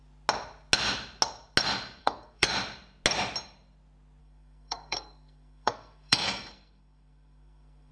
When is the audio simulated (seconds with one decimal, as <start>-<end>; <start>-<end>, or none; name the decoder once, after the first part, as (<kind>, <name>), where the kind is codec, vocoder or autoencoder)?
2.0-2.5 (codec, SNAC); 4.2-7.9